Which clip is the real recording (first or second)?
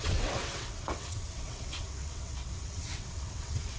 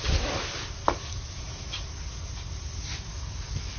second